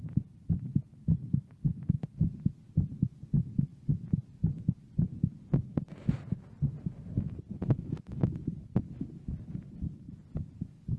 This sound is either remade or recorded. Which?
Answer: recorded